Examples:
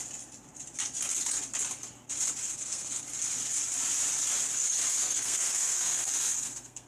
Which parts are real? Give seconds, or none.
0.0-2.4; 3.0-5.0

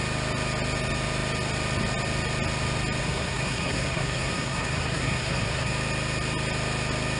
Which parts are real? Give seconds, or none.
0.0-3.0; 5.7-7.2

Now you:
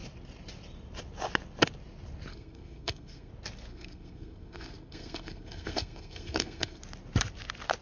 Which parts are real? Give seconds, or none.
0.0-2.3; 3.3-3.7; 6.8-7.8

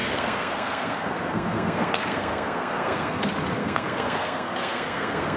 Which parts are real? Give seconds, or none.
3.2-3.6

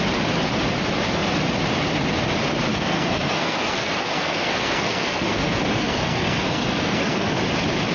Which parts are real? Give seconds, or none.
0.0-2.7; 7.4-7.9